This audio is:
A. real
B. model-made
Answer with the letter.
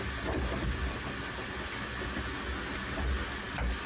A